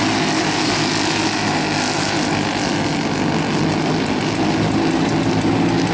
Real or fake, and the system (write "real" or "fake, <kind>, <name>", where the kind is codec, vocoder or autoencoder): real